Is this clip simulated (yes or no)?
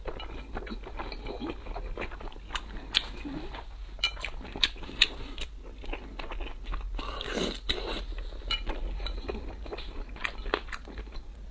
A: no